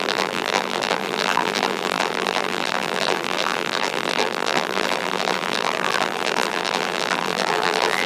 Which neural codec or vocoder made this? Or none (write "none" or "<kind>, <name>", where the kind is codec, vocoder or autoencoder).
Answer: vocoder, BigVGAN v2